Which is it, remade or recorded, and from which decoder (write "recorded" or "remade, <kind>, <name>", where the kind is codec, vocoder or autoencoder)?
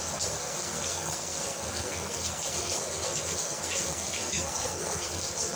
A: remade, codec, SNAC